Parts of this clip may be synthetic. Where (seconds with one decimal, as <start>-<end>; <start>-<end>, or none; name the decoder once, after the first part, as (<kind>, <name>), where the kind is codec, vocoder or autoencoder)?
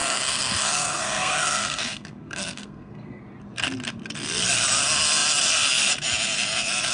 0.0-3.2 (codec, SNAC)